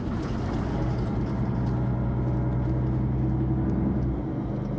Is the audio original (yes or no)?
yes